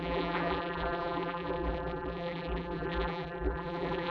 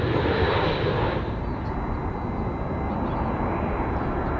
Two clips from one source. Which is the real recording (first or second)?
second